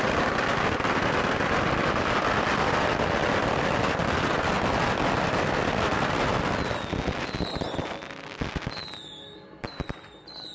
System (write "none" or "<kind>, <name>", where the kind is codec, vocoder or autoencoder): none